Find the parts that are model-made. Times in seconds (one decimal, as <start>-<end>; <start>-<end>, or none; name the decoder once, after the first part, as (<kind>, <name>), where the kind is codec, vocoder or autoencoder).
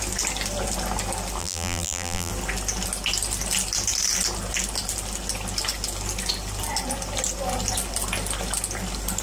1.4-2.3 (vocoder, BigVGAN v2)